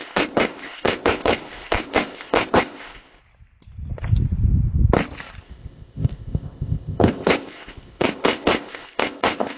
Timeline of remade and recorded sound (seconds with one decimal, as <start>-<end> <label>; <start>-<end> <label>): 0.0-3.2 remade; 3.2-5.4 recorded; 5.4-9.6 remade